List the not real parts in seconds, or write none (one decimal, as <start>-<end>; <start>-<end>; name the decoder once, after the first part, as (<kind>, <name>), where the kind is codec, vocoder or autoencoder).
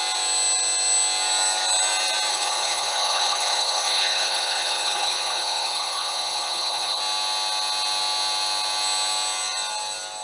2.3-7.0 (codec, HILCodec)